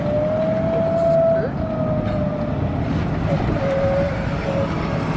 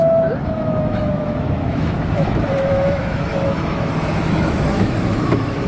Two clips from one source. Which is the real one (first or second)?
first